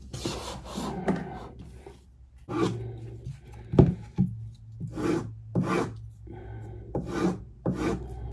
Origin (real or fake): real